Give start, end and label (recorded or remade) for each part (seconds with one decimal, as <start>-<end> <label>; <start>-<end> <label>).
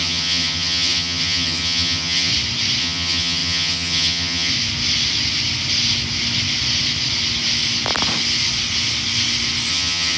0.0-2.3 remade; 2.3-2.8 recorded; 2.8-4.5 remade; 4.5-9.7 recorded; 9.7-10.2 remade